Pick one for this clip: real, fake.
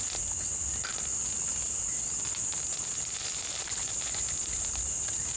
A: real